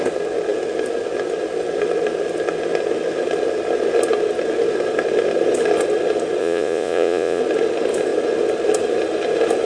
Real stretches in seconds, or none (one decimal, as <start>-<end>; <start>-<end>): 0.0-6.4; 7.4-9.7